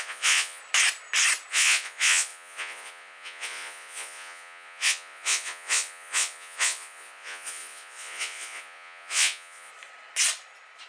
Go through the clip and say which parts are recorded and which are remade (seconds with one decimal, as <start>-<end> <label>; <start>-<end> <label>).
0.0-0.6 remade; 0.6-1.5 recorded; 1.5-9.7 remade; 9.7-10.9 recorded